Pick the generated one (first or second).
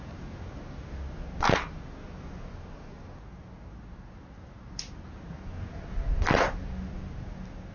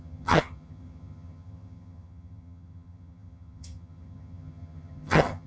second